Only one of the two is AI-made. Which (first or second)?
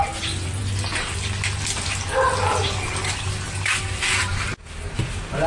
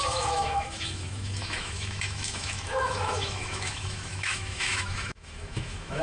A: second